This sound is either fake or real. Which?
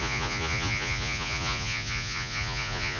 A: fake